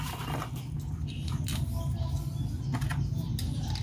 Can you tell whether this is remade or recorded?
recorded